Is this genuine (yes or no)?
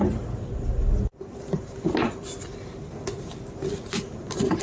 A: yes